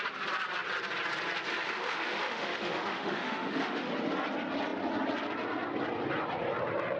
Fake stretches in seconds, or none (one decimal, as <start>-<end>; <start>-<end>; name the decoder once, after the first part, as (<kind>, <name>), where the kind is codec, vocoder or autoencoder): 1.5-3.9 (autoencoder, DAC-VAE)